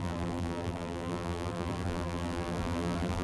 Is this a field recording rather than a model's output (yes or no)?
no